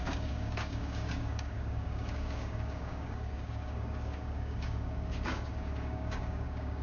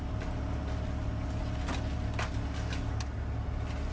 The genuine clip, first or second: second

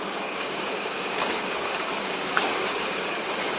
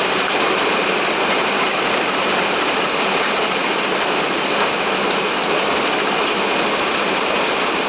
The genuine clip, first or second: second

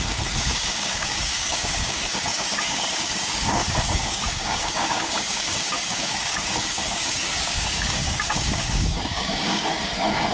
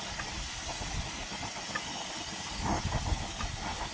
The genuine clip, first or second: second